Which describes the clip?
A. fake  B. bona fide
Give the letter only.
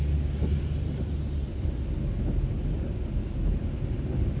B